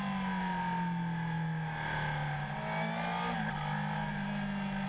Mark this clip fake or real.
real